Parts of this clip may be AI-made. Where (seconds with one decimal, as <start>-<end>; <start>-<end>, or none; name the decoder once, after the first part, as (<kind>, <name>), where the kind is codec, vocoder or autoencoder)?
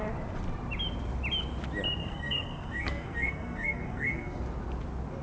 2.0-4.4 (codec, SNAC)